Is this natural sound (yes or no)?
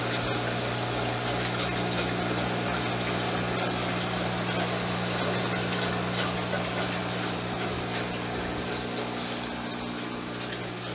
yes